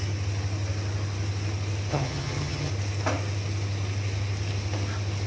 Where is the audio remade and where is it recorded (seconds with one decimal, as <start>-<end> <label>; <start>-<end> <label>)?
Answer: 0.0-1.9 recorded; 1.9-2.7 remade; 2.7-5.3 recorded